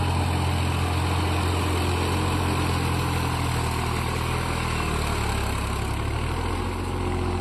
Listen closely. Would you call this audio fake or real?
real